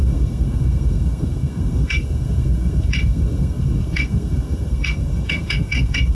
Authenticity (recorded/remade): remade